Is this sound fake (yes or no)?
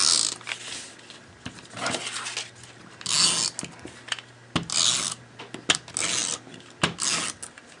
no